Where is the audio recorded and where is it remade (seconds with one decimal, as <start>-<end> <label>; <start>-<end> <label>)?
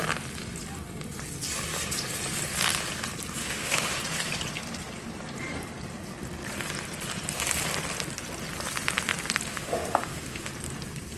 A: 0.0-3.4 recorded; 3.4-4.0 remade; 4.0-9.5 recorded; 9.5-10.5 remade; 10.5-11.2 recorded